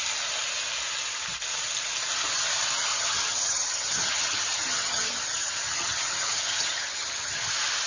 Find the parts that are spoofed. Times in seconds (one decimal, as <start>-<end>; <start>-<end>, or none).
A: 2.9-7.5